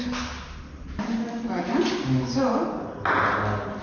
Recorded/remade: recorded